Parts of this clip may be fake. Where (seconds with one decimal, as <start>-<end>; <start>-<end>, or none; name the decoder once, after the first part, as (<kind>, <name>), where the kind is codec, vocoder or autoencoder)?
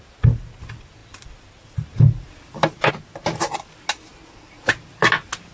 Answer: 1.0-2.9 (vocoder, BigVGAN v2)